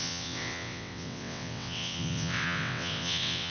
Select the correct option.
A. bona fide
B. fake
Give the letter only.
B